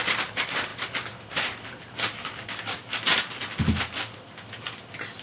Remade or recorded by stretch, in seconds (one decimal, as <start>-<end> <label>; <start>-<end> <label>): 0.0-5.2 recorded